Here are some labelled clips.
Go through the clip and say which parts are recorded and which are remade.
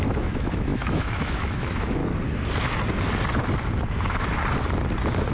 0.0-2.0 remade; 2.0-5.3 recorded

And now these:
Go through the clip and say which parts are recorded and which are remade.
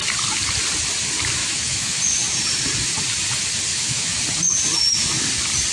0.0-1.4 recorded; 1.4-2.0 remade; 2.0-3.7 recorded; 3.7-4.2 remade; 4.2-5.7 recorded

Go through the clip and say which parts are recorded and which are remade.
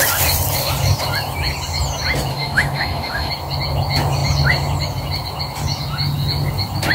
0.0-2.3 recorded; 2.3-3.3 remade; 3.3-6.9 recorded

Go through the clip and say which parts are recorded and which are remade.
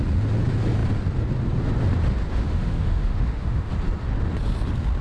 0.0-2.3 recorded; 2.3-3.7 remade; 3.7-5.0 recorded